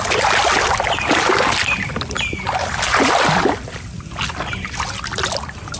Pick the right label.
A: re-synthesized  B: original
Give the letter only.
B